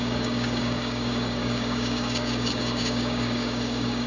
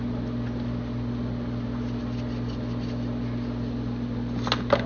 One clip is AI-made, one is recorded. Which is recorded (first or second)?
second